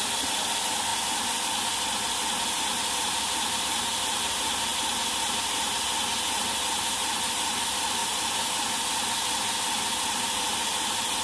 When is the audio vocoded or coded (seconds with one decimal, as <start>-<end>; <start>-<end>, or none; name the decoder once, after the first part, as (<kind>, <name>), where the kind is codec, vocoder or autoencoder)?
8.0-8.6 (vocoder, BigVGAN v2)